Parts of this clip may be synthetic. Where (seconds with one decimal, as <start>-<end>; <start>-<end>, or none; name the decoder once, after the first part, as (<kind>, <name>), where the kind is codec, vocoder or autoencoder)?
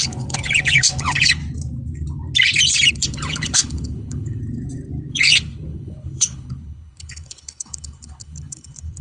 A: 0.0-1.4 (codec, HILCodec); 2.9-4.4; 5.1-9.0